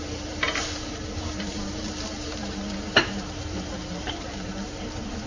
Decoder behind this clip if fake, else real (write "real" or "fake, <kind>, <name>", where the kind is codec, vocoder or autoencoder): fake, vocoder, BigVGAN v2